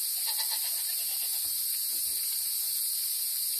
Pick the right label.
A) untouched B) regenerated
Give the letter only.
A